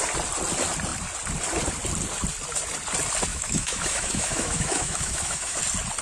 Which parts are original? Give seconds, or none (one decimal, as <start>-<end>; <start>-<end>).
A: 0.0-3.3; 5.6-6.0